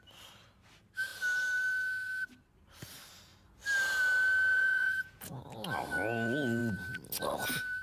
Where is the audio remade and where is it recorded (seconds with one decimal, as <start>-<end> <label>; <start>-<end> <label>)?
0.0-4.5 recorded; 4.5-5.4 remade; 5.4-7.8 recorded